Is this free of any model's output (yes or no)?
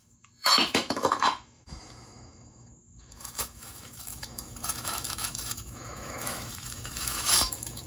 no